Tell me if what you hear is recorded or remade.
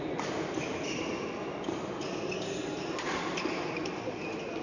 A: recorded